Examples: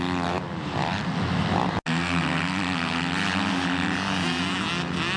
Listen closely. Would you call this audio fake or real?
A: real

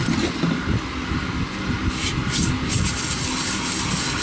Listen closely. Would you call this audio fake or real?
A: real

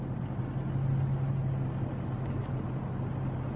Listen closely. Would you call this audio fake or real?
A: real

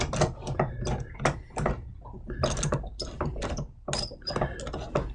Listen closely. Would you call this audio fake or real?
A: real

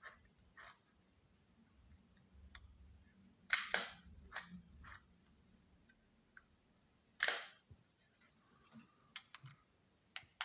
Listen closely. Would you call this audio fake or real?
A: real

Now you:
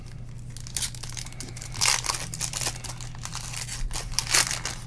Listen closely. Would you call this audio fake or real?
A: real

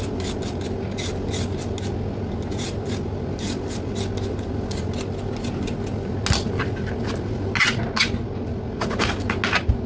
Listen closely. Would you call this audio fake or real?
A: real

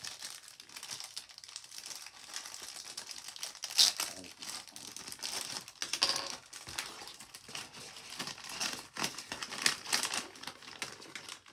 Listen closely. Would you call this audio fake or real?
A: real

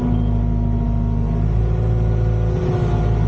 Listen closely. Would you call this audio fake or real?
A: real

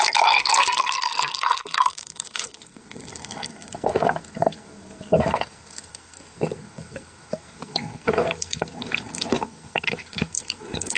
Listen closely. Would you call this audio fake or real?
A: fake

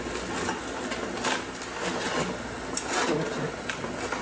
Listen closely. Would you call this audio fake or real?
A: real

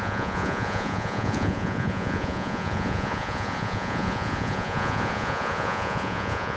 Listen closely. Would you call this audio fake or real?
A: fake